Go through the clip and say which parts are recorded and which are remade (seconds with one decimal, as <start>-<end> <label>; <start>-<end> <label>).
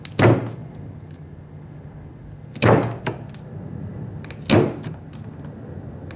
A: 0.0-6.2 recorded